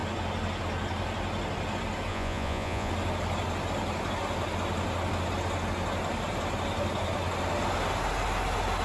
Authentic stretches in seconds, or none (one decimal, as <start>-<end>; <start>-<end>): 0.0-2.1; 2.9-8.8